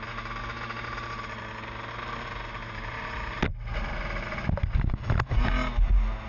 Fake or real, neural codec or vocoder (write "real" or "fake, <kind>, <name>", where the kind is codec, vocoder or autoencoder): real